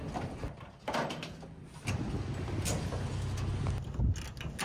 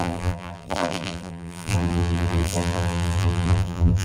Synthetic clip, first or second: second